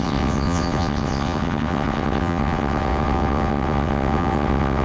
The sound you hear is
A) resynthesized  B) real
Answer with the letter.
A